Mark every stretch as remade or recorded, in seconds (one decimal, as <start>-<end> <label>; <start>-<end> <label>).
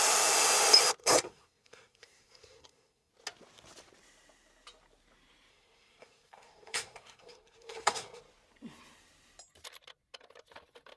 0.0-1.0 recorded; 1.0-3.1 remade; 3.1-5.5 recorded; 5.5-8.2 remade; 8.2-11.0 recorded